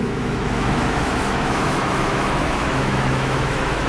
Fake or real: fake